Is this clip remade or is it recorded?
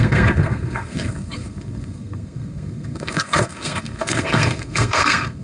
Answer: remade